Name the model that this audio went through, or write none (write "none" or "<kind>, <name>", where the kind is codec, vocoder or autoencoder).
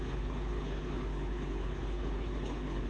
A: codec, HILCodec